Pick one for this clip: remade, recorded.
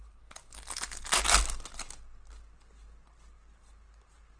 recorded